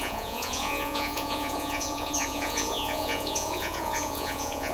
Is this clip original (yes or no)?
no